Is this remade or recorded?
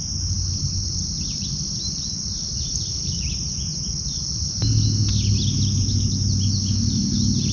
recorded